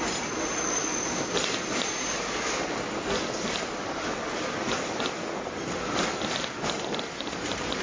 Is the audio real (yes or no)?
yes